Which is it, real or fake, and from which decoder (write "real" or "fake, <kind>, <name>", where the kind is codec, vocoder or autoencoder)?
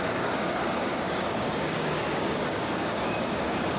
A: fake, codec, DAC